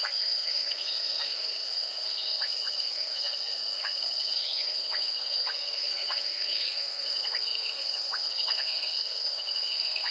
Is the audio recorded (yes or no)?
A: no